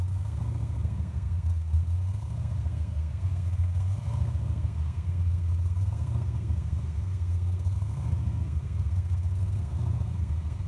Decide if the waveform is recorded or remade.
remade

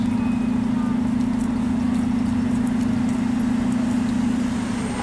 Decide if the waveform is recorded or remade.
recorded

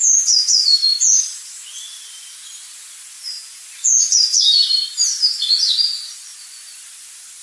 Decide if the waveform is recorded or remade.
recorded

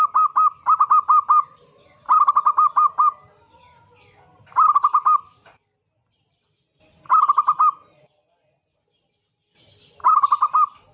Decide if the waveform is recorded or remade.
recorded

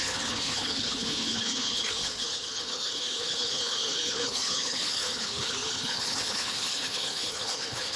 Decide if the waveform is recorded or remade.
remade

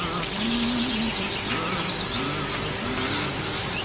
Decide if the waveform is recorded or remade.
remade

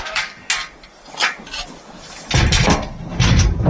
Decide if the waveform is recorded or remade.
recorded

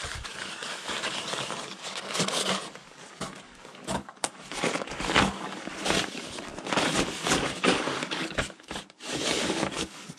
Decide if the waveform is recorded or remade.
remade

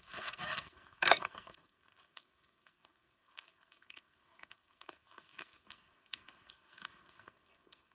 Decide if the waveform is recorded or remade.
remade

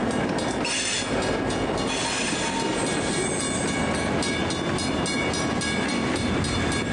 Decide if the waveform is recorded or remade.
recorded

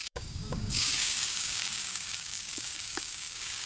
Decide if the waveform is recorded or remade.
remade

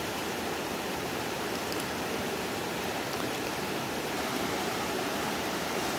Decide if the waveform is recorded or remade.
remade